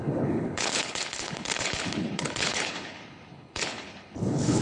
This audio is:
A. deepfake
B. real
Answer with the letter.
A